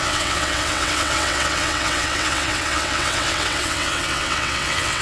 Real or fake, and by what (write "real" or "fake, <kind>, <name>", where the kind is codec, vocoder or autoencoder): fake, vocoder, WaveNeXt